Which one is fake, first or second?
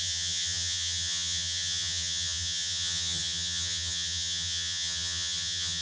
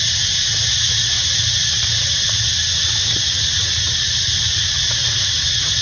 first